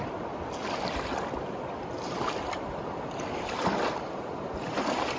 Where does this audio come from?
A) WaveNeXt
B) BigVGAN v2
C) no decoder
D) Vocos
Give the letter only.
C